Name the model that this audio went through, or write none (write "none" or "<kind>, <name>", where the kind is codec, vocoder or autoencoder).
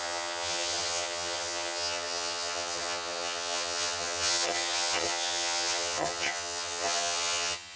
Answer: vocoder, HiFi-GAN